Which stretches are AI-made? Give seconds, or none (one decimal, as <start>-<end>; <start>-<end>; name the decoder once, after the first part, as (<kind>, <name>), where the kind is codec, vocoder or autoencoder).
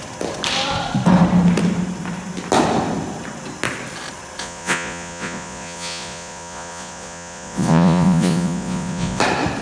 4.4-9.2 (vocoder, Vocos)